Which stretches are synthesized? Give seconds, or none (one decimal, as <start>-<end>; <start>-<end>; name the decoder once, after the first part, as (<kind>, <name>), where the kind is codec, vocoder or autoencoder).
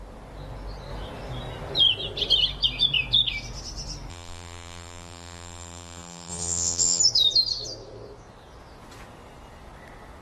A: 4.1-7.0 (vocoder, BigVGAN v2)